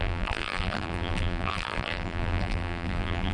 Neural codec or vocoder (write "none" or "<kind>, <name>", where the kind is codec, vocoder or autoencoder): vocoder, BigVGAN v2